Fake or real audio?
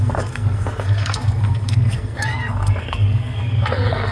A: fake